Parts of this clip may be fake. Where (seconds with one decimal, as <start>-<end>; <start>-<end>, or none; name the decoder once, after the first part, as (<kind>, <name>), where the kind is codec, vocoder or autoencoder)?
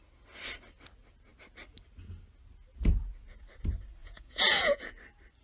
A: 4.0-4.9 (vocoder, Vocos)